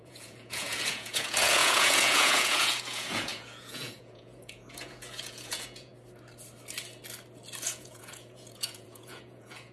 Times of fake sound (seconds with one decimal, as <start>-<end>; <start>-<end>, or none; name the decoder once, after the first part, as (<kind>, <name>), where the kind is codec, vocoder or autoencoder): 0.0-5.9 (vocoder, Vocos); 7.6-9.7